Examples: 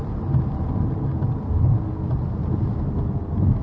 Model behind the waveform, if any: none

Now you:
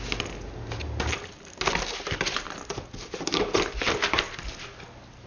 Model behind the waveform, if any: none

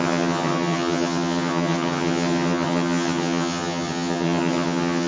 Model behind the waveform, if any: vocoder, HiFi-GAN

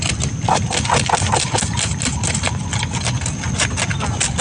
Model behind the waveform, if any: none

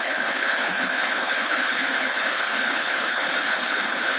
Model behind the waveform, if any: codec, HILCodec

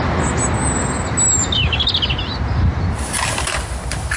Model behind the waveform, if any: none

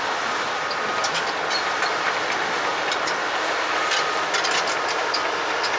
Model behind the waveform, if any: none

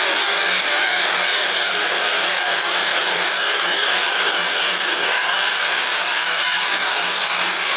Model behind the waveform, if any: codec, DAC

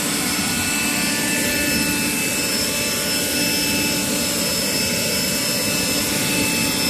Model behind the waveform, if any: none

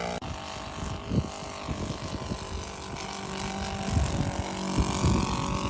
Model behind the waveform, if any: none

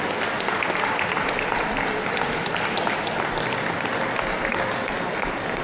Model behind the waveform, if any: vocoder, BigVGAN v2